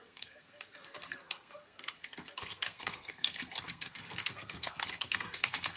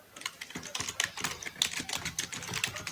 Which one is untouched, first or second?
second